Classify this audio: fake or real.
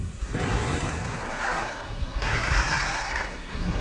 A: fake